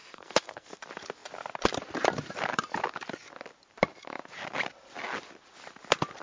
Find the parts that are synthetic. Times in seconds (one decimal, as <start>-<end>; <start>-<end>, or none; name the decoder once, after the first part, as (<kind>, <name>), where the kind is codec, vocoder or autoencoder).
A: 0.0-0.7 (codec, SNAC)